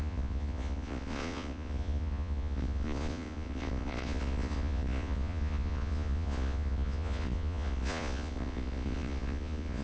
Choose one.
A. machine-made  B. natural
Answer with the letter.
A